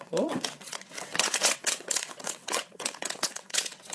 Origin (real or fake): fake